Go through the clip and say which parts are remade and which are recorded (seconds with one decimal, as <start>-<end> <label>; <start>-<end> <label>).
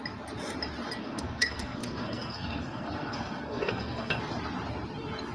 0.0-1.0 recorded; 1.0-4.2 remade; 4.2-5.3 recorded